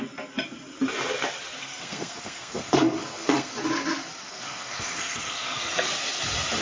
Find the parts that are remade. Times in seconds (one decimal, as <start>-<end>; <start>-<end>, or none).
1.6-3.5; 4.2-5.9